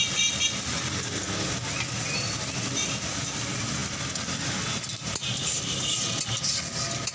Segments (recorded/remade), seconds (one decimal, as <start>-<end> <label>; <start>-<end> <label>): 0.0-7.1 recorded